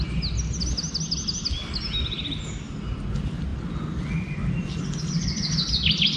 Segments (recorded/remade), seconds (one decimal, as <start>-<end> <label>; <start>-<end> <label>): 0.0-6.2 recorded